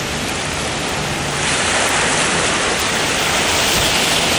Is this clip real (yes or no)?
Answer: yes